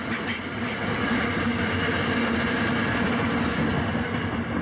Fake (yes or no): yes